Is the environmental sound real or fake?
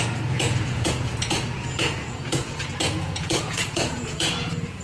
fake